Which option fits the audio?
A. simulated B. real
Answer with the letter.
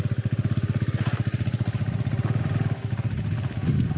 B